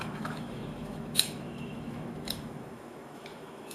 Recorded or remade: remade